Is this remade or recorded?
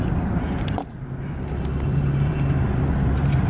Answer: remade